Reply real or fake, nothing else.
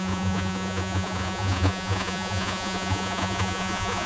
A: fake